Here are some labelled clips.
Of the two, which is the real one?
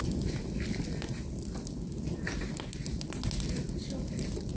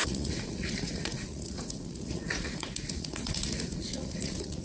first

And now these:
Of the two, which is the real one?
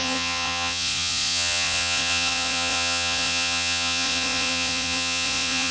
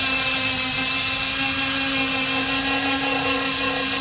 second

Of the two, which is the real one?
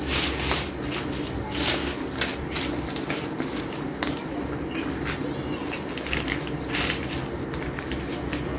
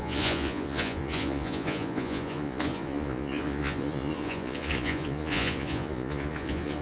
first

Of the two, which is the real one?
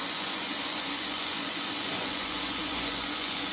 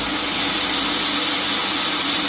second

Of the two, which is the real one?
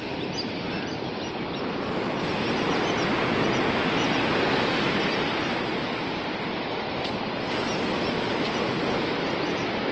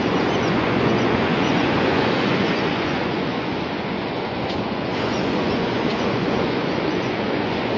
first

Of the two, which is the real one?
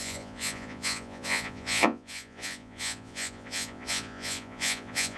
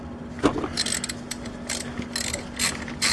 second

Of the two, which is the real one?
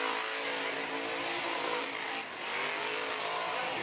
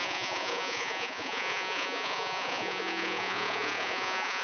first